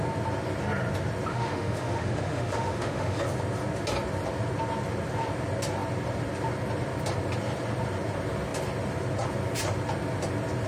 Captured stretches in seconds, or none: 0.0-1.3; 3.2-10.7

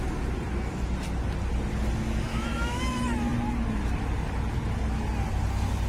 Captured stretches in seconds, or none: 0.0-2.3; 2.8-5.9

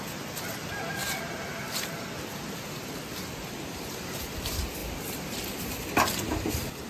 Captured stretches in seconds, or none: 0.0-6.9

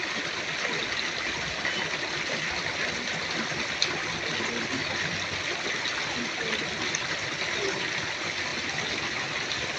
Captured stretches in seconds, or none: 0.0-9.8

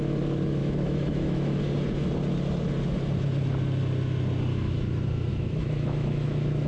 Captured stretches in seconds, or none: 0.0-0.6; 1.6-5.3

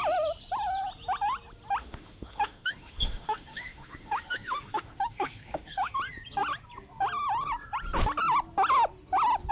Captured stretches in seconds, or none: 0.0-1.8; 5.9-9.5